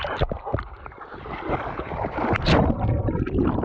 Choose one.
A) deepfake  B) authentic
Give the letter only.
B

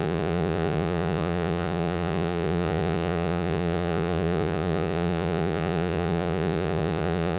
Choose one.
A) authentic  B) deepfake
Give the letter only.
B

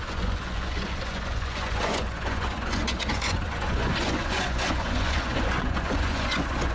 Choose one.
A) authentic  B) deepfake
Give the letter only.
B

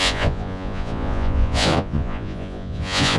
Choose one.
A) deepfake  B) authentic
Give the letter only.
A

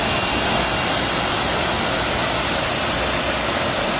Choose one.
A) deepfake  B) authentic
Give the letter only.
B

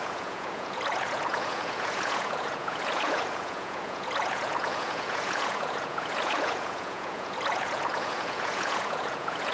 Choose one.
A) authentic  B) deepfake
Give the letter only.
B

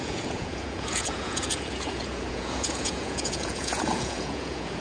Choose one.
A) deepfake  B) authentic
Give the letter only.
A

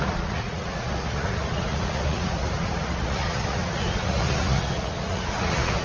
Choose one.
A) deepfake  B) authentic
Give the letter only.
A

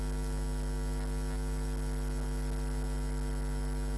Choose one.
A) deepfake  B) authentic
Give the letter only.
B